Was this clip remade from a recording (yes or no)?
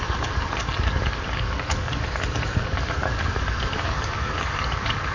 yes